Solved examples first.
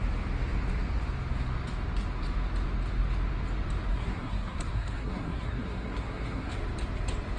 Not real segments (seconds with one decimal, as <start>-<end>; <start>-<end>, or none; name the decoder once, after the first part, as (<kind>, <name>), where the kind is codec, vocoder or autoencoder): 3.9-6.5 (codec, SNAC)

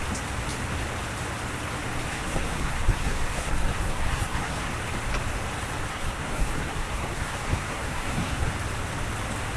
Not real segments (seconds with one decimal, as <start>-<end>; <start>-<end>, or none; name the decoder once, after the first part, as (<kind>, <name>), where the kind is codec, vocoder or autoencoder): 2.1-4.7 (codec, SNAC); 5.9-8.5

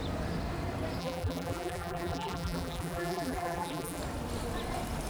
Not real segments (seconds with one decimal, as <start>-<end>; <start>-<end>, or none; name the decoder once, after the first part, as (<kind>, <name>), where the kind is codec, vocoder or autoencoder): 1.0-4.0 (vocoder, BigVGAN v2)